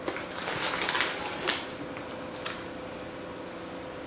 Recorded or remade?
recorded